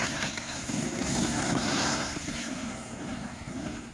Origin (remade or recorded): remade